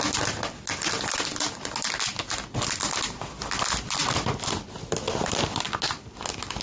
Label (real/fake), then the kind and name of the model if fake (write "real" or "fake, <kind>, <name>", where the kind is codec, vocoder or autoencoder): real